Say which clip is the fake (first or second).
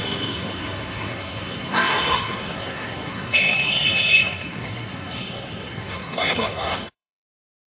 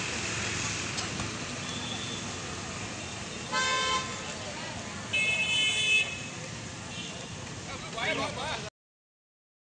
first